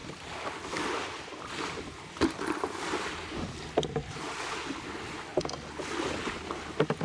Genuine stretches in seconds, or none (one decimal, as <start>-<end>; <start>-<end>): 4.2-7.0